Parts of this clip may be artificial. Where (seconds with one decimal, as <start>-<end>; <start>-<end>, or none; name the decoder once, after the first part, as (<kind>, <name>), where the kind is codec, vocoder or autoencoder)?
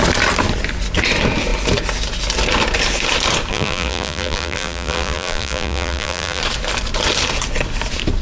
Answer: 3.5-6.4 (vocoder, BigVGAN v2)